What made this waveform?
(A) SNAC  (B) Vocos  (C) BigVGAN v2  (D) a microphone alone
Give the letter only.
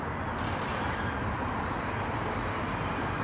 C